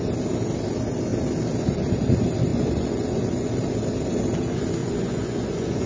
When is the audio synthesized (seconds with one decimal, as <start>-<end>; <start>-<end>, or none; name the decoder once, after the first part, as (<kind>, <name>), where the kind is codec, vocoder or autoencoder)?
2.5-3.5 (vocoder, Vocos); 4.8-5.9